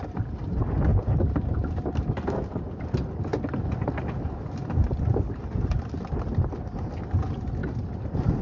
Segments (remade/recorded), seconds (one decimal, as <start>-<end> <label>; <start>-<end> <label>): 0.0-0.9 recorded; 0.9-2.6 remade; 2.6-8.4 recorded